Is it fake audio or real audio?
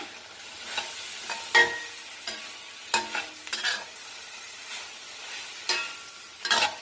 real